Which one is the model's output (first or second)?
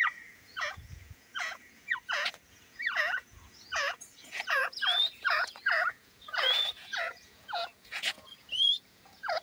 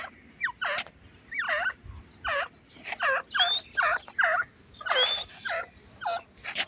first